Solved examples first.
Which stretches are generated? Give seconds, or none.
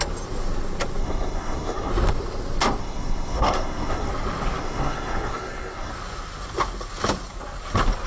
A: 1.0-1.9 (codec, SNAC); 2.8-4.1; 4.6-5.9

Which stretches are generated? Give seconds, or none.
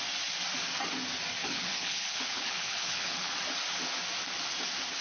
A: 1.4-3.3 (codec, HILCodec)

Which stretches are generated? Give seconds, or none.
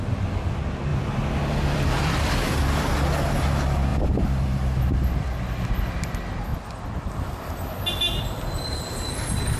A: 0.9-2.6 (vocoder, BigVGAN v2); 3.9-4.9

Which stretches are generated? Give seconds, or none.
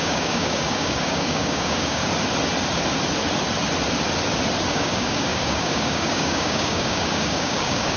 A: 0.0-2.0 (codec, DAC); 4.7-8.0